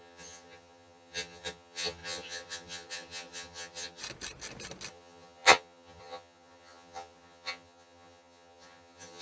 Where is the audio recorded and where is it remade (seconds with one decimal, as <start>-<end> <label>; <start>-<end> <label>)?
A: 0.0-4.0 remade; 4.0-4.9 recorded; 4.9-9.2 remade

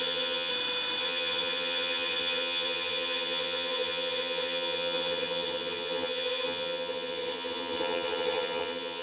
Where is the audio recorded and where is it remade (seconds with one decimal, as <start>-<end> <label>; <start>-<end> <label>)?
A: 0.0-0.5 remade; 0.5-1.0 recorded; 1.0-9.0 remade

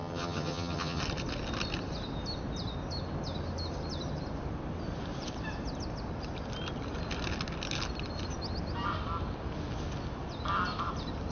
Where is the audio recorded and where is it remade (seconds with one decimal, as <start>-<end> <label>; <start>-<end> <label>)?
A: 0.0-1.0 remade; 1.0-11.3 recorded

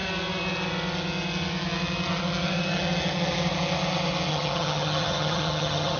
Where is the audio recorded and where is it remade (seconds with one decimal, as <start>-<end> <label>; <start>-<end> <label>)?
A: 0.0-4.3 recorded; 4.3-6.0 remade

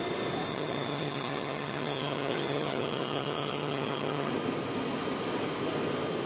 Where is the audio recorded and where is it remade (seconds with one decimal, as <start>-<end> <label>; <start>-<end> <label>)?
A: 0.0-0.5 recorded; 0.5-4.3 remade; 4.3-6.3 recorded

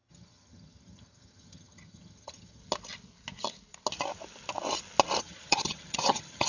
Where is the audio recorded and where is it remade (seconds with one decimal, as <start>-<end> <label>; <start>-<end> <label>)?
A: 0.0-2.6 remade; 2.6-5.2 recorded; 5.2-6.5 remade